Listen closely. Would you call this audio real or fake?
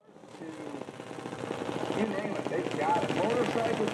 real